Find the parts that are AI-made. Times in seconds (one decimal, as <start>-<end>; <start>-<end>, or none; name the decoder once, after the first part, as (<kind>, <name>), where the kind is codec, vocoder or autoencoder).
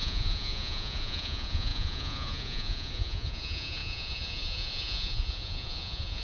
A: 0.0-6.2 (vocoder, Vocos)